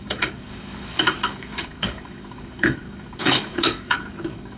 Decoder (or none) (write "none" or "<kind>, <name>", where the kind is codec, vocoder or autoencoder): codec, DAC